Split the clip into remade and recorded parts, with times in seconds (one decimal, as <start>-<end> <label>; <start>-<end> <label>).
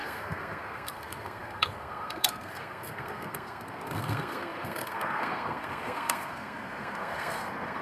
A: 0.0-7.8 remade